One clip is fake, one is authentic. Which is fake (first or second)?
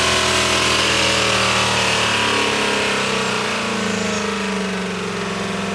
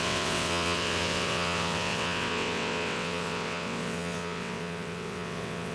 second